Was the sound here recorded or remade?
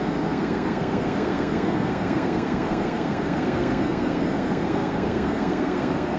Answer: remade